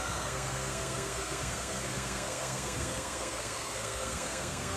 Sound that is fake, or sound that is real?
fake